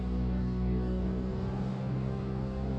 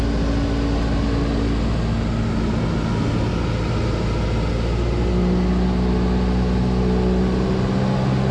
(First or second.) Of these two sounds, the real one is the second